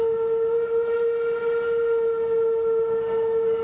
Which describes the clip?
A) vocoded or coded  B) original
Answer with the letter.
B